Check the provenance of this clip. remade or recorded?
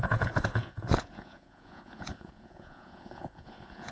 remade